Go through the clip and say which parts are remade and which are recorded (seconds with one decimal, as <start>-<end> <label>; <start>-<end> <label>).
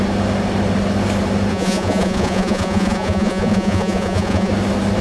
0.0-1.5 recorded; 1.5-4.5 remade; 4.5-5.0 recorded